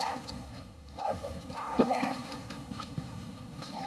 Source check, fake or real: fake